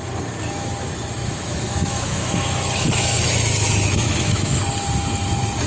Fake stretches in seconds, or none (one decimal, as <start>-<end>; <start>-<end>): 1.2-4.6